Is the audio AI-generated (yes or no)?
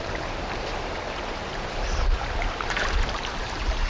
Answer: yes